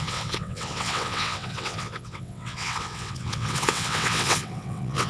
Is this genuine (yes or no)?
no